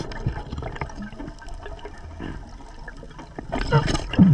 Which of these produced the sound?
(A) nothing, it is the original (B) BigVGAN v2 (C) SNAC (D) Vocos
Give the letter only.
A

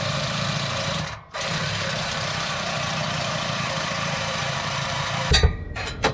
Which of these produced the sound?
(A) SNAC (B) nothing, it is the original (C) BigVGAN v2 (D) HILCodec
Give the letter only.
C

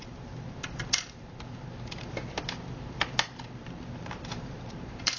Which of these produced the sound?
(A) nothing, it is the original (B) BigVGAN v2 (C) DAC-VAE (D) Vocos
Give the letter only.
B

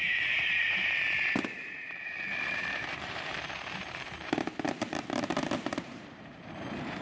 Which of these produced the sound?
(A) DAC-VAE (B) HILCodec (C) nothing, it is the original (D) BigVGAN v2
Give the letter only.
D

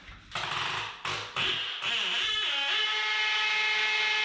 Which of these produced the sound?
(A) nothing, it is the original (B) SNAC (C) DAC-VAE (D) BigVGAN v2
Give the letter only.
A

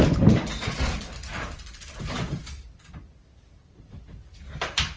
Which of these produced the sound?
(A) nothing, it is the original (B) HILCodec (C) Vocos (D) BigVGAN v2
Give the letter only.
D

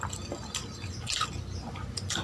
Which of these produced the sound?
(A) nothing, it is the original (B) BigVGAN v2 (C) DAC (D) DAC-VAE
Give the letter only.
A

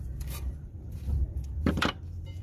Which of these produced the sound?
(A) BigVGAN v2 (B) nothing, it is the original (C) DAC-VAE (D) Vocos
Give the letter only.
A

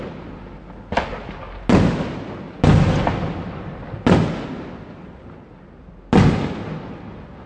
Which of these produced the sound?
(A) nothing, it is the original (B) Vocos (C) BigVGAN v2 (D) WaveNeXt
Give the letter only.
A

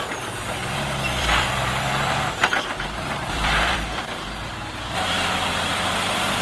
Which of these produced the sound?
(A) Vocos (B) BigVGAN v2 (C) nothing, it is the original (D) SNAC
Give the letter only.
B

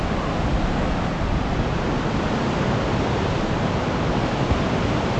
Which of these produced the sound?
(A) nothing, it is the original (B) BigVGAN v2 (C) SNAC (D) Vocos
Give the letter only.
A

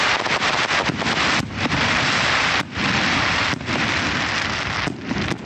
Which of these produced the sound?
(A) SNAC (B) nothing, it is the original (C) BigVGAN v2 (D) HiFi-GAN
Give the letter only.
C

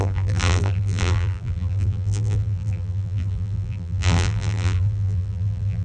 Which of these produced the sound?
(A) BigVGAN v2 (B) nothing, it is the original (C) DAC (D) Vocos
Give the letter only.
A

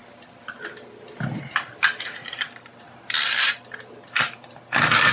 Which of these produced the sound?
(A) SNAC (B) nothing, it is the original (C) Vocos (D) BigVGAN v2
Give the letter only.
D